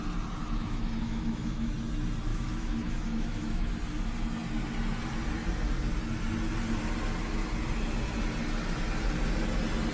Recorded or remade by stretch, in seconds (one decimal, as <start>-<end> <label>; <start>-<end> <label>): 0.0-0.4 recorded; 0.4-1.7 remade; 1.7-2.3 recorded; 2.3-3.7 remade; 3.7-9.9 recorded